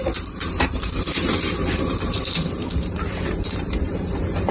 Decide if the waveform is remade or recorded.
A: remade